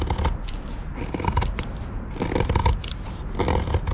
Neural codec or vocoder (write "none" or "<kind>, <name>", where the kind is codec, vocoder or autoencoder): none